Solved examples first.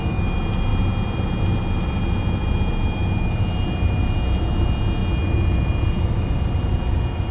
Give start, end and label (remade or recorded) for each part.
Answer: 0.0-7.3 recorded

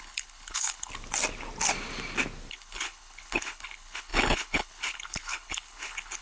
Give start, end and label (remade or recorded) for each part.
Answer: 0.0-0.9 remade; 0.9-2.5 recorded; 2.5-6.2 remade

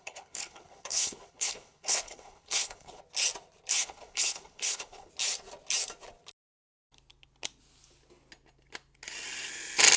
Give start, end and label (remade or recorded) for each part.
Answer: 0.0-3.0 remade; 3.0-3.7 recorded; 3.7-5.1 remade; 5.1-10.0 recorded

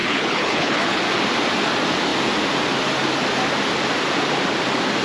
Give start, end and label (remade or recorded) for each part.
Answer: 0.0-1.0 remade; 1.0-5.0 recorded